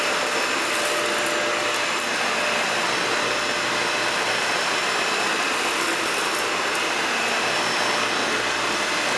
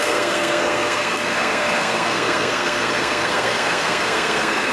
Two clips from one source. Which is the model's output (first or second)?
second